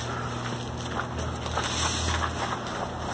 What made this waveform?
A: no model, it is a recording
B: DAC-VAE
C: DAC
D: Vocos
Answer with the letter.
A